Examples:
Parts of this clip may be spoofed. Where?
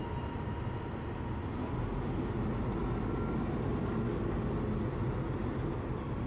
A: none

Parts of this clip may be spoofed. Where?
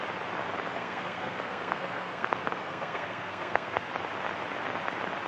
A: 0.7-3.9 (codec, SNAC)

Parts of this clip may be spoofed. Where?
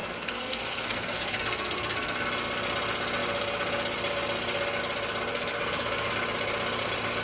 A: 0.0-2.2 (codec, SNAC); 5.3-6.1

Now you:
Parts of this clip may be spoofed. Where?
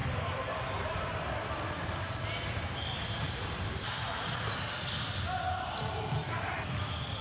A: 0.0-4.3 (vocoder, BigVGAN v2)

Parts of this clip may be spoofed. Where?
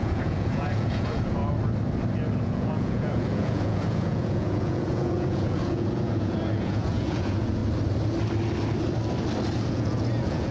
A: 0.0-1.4 (vocoder, Vocos); 2.4-7.6; 9.7-10.5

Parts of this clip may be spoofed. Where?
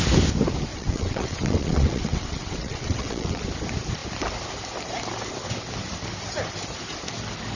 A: 0.7-3.4 (vocoder, WaveNeXt)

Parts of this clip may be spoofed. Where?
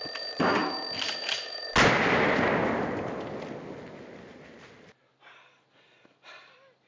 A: none